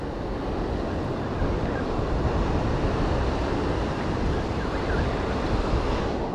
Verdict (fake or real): real